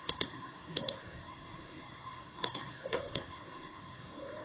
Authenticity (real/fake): fake